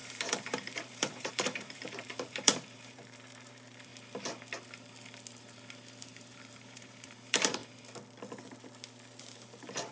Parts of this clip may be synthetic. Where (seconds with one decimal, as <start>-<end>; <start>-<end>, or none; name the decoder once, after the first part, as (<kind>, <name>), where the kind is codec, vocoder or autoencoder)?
0.0-3.9 (vocoder, BigVGAN v2); 6.0-7.6; 9.2-9.9